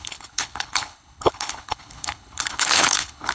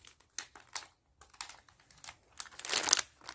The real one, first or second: second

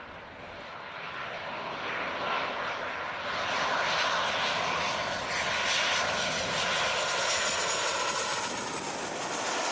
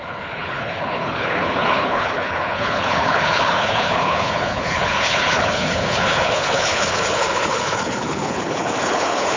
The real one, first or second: first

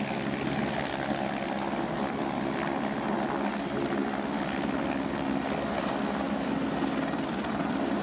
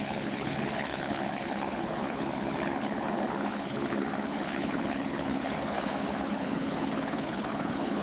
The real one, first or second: first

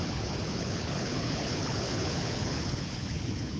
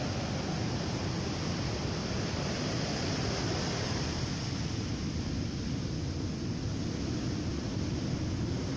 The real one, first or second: second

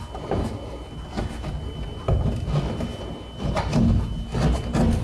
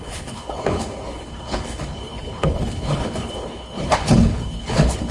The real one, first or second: first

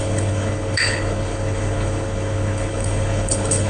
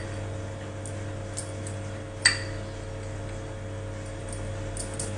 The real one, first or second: second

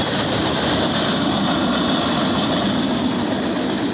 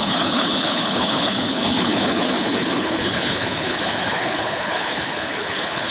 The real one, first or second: first